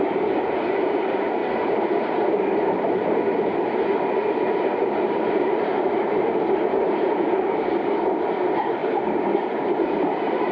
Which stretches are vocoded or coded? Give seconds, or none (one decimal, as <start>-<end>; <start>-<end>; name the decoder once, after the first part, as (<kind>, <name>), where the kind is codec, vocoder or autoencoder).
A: 0.0-1.4 (vocoder, BigVGAN v2); 3.5-10.5